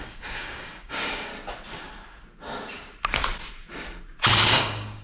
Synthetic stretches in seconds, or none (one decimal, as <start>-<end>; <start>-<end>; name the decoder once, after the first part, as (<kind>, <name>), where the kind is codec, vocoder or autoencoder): 0.0-1.3 (codec, DAC); 4.3-5.0

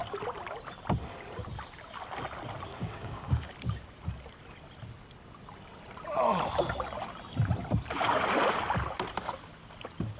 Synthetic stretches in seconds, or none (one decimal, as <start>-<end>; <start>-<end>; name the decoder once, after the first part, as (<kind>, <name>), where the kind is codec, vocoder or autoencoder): 2.7-3.5 (codec, DAC)